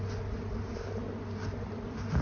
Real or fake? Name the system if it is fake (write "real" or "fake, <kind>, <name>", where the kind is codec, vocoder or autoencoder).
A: real